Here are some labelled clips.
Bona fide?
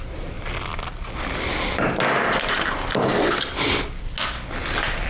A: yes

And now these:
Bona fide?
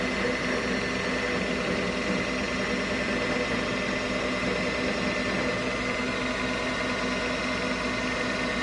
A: yes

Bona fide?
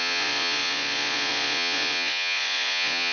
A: no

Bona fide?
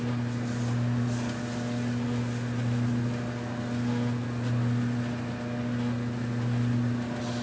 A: yes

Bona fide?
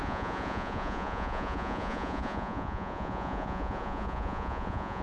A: no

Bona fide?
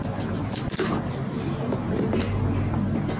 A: yes